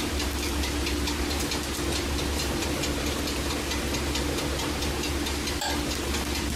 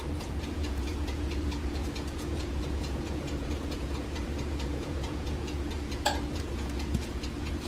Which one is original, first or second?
first